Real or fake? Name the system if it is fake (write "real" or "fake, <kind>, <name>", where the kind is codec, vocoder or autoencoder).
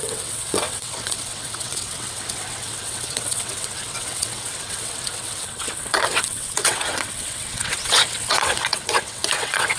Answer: fake, vocoder, WaveNeXt